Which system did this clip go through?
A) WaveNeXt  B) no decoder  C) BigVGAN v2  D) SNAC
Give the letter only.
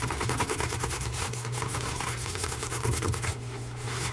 D